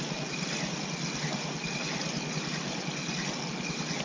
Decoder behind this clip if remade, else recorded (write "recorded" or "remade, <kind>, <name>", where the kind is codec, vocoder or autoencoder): recorded